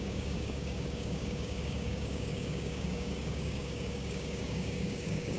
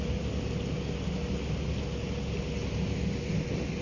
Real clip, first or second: second